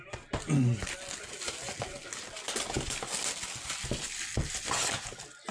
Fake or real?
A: real